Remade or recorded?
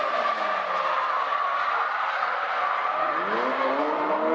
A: recorded